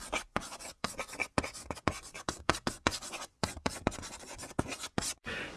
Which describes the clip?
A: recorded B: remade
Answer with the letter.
B